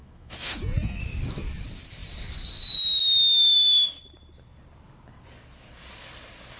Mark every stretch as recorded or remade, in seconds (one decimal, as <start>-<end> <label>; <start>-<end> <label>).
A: 0.0-1.0 remade; 1.0-6.6 recorded